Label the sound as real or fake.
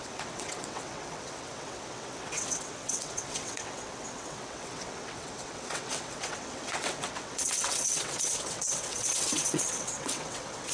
fake